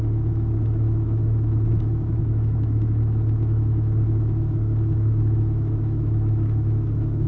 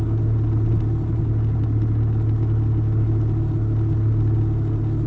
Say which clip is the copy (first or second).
first